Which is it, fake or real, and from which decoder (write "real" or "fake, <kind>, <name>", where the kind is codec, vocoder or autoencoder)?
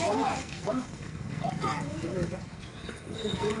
fake, codec, SNAC